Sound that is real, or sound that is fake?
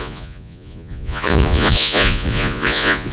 fake